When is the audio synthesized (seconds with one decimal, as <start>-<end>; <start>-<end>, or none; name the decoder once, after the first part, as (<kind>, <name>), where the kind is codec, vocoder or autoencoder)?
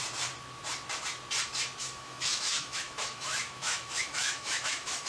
1.8-5.1 (autoencoder, DAC-VAE)